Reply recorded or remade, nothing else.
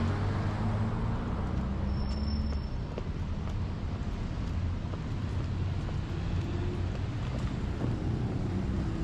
recorded